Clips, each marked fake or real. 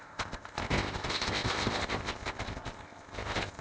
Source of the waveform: fake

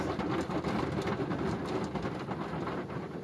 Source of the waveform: real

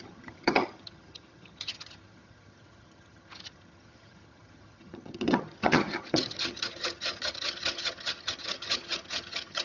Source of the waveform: fake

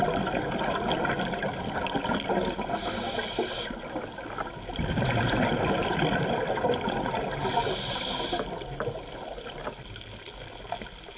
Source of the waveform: real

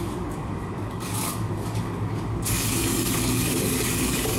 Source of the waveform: fake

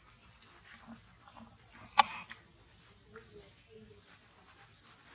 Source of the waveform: real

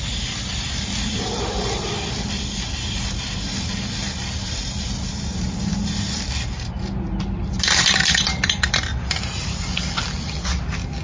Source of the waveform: real